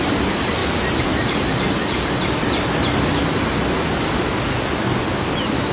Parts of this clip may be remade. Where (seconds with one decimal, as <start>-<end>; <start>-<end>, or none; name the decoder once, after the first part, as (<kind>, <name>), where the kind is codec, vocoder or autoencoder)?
none